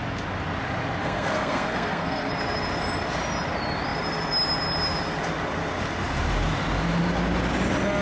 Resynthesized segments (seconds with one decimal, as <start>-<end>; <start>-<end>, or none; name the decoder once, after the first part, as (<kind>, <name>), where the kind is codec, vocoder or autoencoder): 1.0-2.3 (codec, SNAC)